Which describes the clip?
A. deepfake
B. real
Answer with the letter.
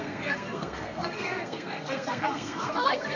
A